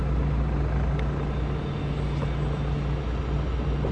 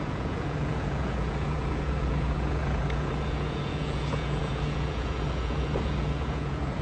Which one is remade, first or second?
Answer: second